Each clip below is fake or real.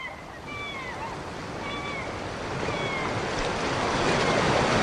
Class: real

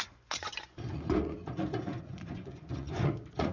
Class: fake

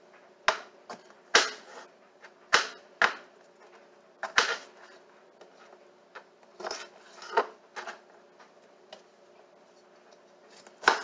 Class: real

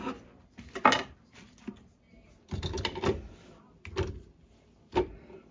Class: real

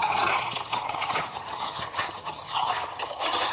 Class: fake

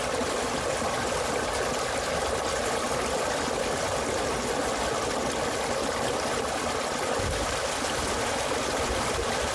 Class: real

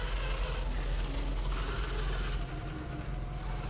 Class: real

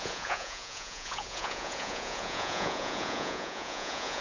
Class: fake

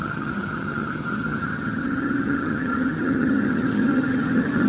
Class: fake